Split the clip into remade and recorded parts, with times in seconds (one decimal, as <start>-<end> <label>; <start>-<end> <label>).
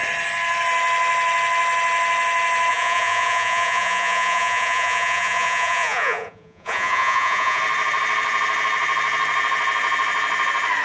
0.0-2.7 recorded; 2.7-7.6 remade; 7.6-10.8 recorded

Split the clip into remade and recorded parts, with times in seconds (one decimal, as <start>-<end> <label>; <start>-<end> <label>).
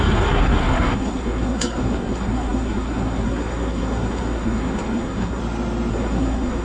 0.0-5.4 remade; 5.4-5.9 recorded; 5.9-6.6 remade